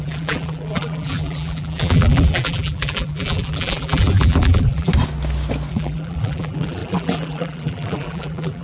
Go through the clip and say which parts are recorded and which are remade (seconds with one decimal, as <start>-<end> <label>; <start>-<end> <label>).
0.0-4.9 remade; 4.9-5.7 recorded; 5.7-8.6 remade